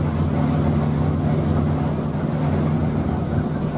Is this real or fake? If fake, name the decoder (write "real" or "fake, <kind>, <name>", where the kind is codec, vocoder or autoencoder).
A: real